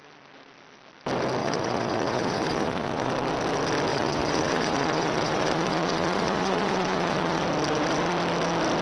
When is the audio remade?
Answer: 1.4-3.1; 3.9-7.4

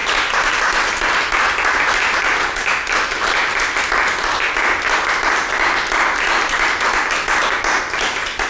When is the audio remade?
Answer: 1.8-2.7; 7.8-8.5

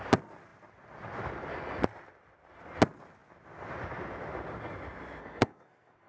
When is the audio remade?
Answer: 5.2-6.1

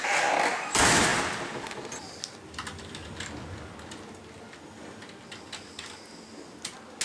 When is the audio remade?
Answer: none

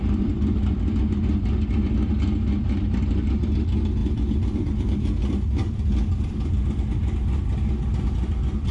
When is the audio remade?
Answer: 0.0-1.2; 4.0-6.8